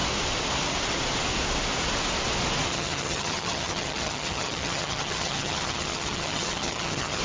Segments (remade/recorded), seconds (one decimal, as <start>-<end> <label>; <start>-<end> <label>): 0.0-2.7 recorded; 2.7-7.2 remade